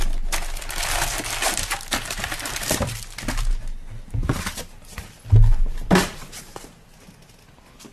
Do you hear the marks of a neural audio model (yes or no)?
no